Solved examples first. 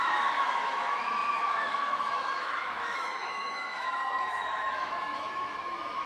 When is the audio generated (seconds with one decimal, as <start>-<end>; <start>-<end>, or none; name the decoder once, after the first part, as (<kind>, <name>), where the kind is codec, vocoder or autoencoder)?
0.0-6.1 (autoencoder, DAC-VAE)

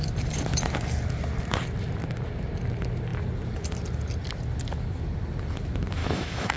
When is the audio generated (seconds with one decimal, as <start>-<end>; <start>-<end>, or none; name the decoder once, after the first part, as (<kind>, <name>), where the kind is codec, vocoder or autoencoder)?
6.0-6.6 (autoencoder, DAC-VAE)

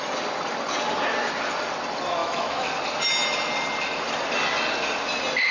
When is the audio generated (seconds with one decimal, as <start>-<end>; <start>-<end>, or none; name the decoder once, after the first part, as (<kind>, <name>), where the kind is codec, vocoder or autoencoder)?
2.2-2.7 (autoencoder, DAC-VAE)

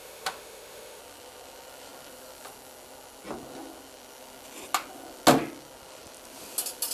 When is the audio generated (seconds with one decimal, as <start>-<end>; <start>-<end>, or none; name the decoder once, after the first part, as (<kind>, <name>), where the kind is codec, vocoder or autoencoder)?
0.0-1.0 (autoencoder, DAC-VAE)

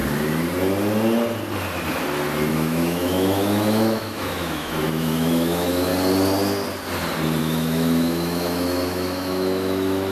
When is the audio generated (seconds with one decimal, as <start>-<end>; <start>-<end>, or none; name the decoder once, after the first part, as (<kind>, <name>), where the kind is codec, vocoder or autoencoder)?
2.5-5.9 (autoencoder, DAC-VAE); 7.4-10.1